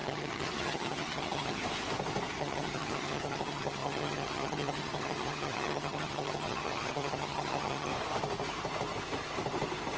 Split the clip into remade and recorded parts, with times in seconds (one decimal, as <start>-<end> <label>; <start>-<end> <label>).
0.0-1.6 remade; 1.6-2.4 recorded; 2.4-7.9 remade; 7.9-10.0 recorded